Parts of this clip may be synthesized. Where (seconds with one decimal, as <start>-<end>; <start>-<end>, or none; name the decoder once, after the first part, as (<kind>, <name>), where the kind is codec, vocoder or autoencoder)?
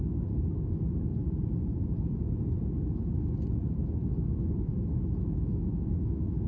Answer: 0.0-1.1 (autoencoder, DAC-VAE); 3.7-6.5